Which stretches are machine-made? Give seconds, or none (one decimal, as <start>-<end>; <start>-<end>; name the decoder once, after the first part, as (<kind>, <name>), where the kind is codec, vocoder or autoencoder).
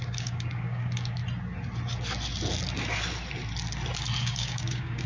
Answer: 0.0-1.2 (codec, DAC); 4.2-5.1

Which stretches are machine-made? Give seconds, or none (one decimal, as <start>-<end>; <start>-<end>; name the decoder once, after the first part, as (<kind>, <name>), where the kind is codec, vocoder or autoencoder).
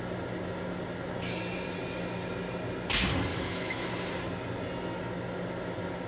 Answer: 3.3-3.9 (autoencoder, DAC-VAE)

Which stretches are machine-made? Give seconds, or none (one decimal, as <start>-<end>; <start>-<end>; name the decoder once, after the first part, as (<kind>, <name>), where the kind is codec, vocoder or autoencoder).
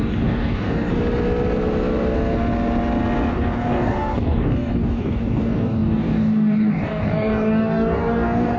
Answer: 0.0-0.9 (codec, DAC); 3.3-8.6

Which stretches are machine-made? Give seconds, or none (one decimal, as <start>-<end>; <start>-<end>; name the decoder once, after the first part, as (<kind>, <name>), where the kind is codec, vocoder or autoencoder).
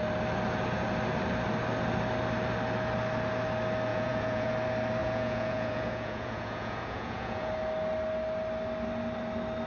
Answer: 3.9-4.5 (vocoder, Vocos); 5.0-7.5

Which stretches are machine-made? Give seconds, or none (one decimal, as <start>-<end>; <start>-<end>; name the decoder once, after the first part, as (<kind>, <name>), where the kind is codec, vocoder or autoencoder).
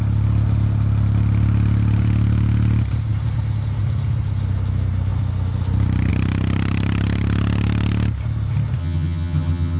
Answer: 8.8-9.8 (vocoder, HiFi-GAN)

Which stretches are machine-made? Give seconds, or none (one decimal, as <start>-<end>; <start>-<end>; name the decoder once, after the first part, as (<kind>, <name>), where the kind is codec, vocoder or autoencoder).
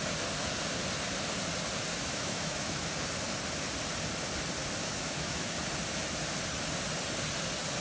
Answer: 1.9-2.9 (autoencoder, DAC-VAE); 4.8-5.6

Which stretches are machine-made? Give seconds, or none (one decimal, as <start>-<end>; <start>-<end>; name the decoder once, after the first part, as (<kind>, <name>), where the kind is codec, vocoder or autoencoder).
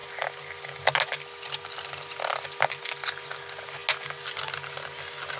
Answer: none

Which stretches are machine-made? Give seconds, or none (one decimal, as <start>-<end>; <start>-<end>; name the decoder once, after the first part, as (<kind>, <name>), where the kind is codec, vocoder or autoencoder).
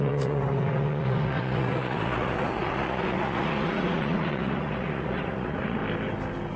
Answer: 0.0-5.8 (vocoder, Vocos)